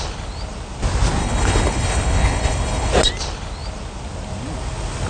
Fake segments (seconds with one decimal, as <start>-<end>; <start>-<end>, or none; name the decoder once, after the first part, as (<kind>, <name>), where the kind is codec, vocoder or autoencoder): 1.2-2.9 (codec, HILCodec)